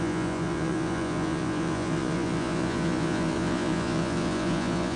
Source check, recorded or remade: remade